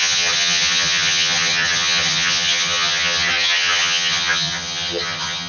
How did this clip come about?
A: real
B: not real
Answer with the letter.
B